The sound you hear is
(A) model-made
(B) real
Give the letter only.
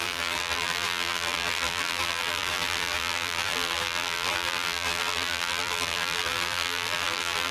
A